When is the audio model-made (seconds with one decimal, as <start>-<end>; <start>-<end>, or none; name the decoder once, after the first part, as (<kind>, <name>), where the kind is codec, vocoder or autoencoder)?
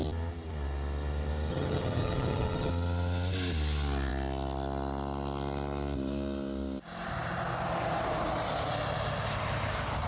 1.5-2.7 (vocoder, HiFi-GAN)